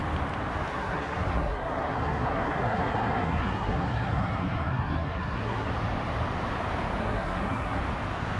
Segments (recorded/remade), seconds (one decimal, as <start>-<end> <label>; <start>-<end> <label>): 0.0-0.7 recorded; 0.7-5.7 remade; 5.7-7.0 recorded; 7.0-7.8 remade; 7.8-8.4 recorded